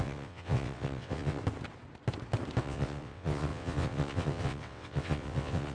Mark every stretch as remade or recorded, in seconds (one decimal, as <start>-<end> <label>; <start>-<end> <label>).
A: 0.0-1.4 remade; 1.4-2.6 recorded; 2.6-5.7 remade